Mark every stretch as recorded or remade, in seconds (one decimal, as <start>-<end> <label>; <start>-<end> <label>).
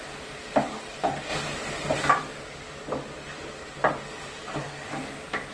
0.0-4.4 recorded; 4.4-5.0 remade; 5.0-5.5 recorded